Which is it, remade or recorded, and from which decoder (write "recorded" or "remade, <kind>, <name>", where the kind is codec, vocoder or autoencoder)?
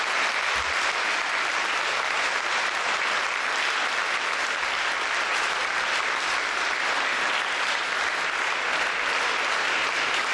recorded